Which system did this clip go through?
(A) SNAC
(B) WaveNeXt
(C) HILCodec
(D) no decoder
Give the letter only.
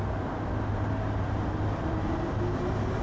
D